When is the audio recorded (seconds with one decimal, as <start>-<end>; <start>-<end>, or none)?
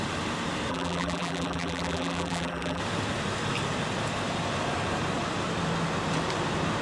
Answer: 0.0-0.7; 2.8-6.8